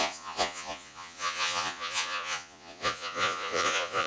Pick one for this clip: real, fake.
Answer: fake